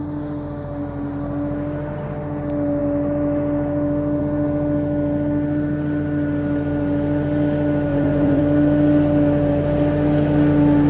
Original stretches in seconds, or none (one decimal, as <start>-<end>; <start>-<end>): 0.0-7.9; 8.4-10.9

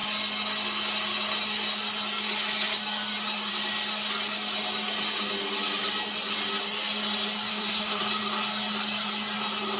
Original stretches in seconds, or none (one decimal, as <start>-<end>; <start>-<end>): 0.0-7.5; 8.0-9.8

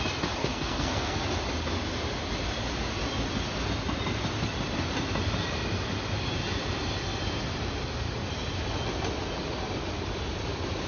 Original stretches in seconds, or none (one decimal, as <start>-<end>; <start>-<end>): 0.0-0.4; 1.2-10.9